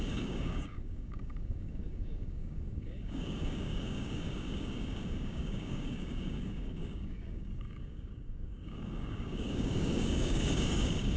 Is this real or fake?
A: fake